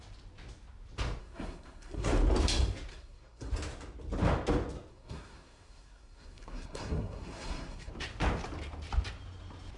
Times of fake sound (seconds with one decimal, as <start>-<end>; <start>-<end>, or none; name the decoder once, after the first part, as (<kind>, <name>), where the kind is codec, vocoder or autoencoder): 1.2-2.1 (codec, SNAC); 2.9-3.5; 4.9-7.9